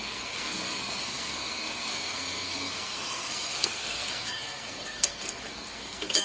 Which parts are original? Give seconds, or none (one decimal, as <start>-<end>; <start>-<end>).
none